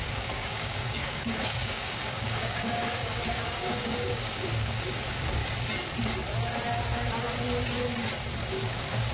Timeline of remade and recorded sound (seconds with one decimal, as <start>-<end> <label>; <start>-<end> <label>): 0.0-5.4 remade; 5.4-8.5 recorded; 8.5-9.1 remade